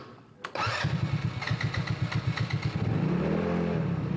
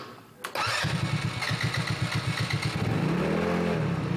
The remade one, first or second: first